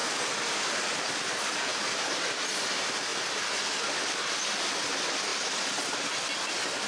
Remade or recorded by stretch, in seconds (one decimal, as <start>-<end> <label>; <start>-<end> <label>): 0.0-6.9 recorded